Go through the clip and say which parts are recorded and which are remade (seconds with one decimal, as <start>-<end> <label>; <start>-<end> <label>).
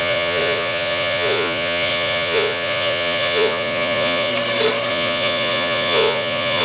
0.0-4.3 remade; 4.3-4.9 recorded; 4.9-6.6 remade